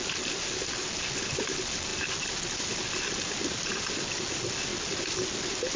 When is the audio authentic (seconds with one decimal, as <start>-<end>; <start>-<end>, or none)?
0.9-4.7